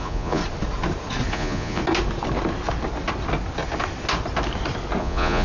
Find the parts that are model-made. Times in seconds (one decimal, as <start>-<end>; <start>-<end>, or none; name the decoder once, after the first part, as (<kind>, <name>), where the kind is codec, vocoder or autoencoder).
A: 0.0-0.4 (vocoder, Vocos); 1.3-1.8; 5.0-5.4